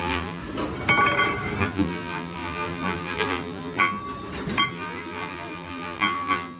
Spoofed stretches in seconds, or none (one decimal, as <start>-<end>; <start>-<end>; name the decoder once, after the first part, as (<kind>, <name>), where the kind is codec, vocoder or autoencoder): 0.0-0.4 (vocoder, BigVGAN v2); 1.6-4.0; 4.7-6.6